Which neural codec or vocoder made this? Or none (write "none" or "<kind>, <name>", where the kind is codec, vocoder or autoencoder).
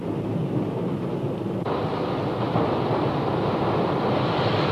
none